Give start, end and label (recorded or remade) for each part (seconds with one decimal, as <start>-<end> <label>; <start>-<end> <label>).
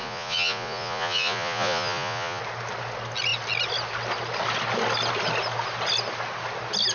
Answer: 0.0-2.4 remade; 2.4-6.9 recorded